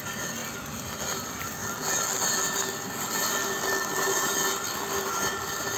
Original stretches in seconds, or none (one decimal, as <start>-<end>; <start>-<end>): 0.0-5.8